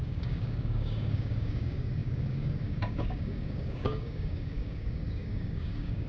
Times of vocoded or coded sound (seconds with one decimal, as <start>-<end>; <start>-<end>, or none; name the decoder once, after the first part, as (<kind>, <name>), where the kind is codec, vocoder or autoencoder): 0.0-6.1 (codec, DAC)